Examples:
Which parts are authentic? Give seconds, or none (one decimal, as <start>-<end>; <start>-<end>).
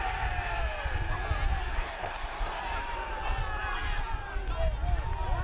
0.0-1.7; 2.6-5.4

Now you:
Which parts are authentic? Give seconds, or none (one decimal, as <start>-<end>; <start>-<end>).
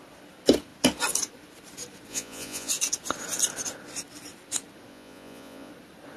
0.0-2.1; 2.7-4.9; 5.7-6.2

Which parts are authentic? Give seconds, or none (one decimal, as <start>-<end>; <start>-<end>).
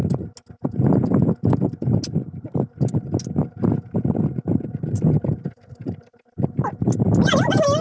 0.0-7.8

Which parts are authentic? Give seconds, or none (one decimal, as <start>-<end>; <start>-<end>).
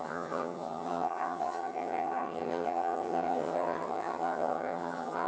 none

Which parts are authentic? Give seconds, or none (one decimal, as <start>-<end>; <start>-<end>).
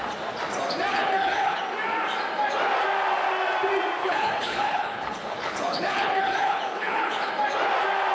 0.0-0.9; 1.6-4.0; 7.3-8.1